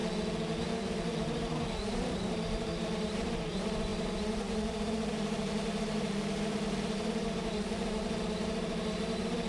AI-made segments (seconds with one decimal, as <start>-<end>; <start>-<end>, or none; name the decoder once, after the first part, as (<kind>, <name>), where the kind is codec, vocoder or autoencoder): 0.6-9.5 (vocoder, BigVGAN v2)